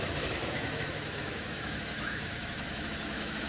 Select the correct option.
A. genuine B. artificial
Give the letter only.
B